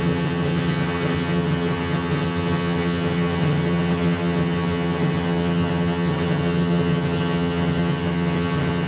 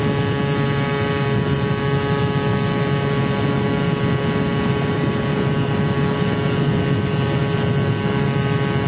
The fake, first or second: first